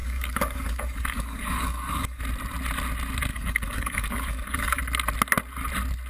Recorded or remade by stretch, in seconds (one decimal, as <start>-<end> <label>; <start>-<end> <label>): 0.0-2.2 remade; 2.2-3.3 recorded; 3.3-4.8 remade; 4.8-6.1 recorded

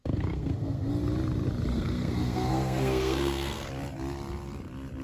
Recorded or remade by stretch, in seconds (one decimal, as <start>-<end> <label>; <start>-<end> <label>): 0.0-0.9 remade; 0.9-1.7 recorded; 1.7-3.7 remade; 3.7-5.0 recorded

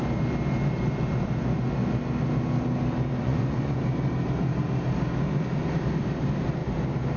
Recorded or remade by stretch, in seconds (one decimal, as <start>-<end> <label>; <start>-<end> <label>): 0.0-3.2 recorded; 3.2-3.8 remade; 3.8-7.2 recorded

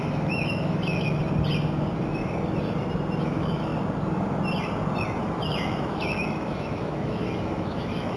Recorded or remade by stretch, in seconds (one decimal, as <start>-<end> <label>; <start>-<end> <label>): 0.0-1.2 remade; 1.2-3.2 recorded; 3.2-3.7 remade; 3.7-5.2 recorded; 5.2-8.2 remade